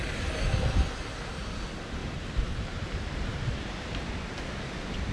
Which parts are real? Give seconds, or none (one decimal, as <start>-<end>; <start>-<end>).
0.0-2.0; 4.1-5.1